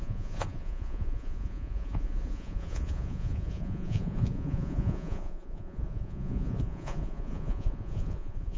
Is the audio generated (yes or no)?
yes